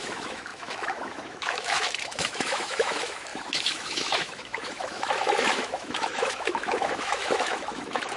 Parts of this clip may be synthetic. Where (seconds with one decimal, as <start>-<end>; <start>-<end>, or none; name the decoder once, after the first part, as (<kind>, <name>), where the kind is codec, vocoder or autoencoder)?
0.0-8.2 (autoencoder, DAC-VAE)